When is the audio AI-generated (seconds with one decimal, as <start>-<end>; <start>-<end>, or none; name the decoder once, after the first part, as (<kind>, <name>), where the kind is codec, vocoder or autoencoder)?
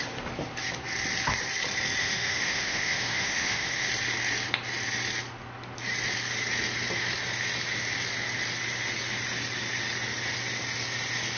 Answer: 2.0-3.9 (autoencoder, DAC-VAE)